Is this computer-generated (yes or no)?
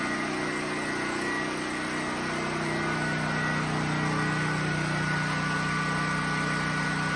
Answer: no